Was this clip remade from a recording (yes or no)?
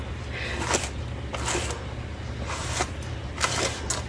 no